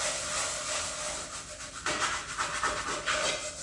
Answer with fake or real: real